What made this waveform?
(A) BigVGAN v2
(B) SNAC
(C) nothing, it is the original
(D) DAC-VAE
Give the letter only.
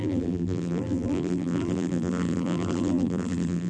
A